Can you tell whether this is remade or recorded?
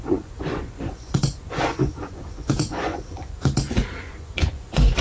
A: remade